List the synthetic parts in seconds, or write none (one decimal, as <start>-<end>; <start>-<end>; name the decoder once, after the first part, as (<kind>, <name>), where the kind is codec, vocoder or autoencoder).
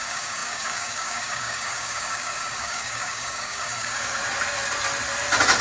0.0-4.2 (codec, DAC)